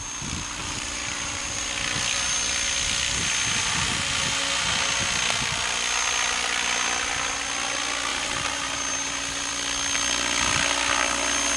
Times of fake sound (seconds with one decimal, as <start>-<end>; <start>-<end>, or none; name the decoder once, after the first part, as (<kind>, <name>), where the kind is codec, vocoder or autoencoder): 0.6-1.6 (vocoder, BigVGAN v2); 8.1-9.5